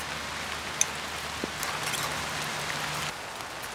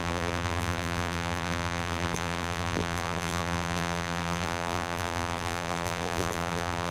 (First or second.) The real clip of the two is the first